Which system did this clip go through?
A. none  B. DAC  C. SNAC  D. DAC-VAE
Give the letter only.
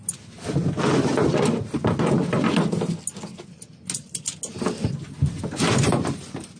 A